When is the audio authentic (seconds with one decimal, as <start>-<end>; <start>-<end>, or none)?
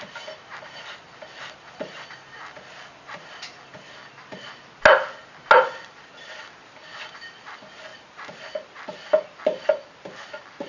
0.0-10.7